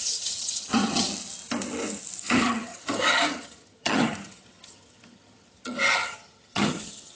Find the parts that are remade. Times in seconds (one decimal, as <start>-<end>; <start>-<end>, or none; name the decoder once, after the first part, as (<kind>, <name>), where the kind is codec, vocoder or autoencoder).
0.0-1.1 (vocoder, HiFi-GAN); 2.2-7.2